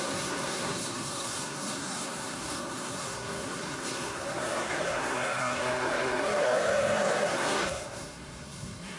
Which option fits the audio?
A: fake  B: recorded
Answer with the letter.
A